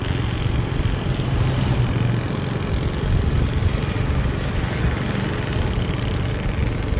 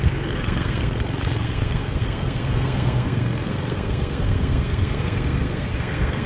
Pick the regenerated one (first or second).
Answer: second